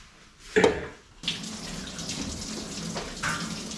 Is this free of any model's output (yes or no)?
yes